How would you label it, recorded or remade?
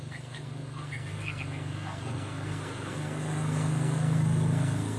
remade